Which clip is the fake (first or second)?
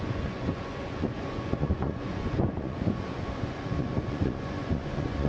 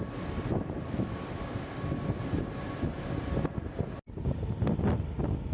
first